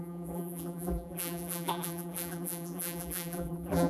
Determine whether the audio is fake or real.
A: fake